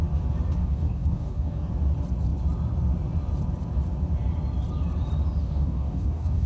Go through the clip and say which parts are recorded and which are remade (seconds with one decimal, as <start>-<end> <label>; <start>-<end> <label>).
0.0-0.6 recorded; 0.6-1.7 remade; 1.7-5.4 recorded; 5.4-6.5 remade